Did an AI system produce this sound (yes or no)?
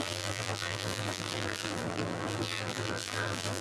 yes